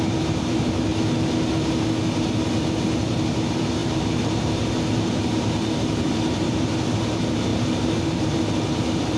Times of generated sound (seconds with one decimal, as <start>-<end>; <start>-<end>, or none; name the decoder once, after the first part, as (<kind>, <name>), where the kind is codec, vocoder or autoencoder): 0.0-0.9 (vocoder, BigVGAN v2); 3.0-9.2